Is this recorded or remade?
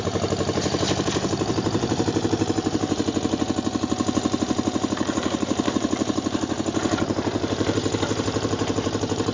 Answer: remade